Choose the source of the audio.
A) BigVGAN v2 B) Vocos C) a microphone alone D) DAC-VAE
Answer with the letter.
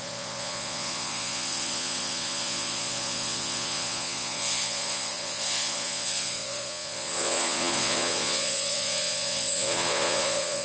B